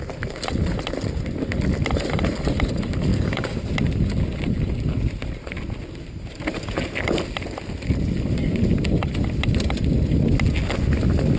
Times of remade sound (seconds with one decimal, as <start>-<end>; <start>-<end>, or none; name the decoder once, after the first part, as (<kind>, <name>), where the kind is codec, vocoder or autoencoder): 3.1-3.6 (codec, DAC)